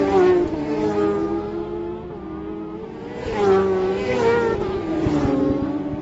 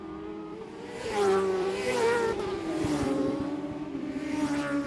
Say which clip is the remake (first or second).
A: second